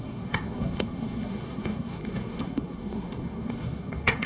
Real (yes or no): no